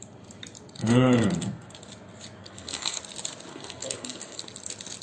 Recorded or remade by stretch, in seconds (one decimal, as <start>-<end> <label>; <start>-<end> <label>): 0.0-0.8 recorded; 0.8-1.7 remade; 1.7-2.4 recorded; 2.4-3.0 remade; 3.0-3.5 recorded; 3.5-4.4 remade; 4.4-5.0 recorded